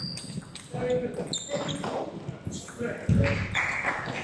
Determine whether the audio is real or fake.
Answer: real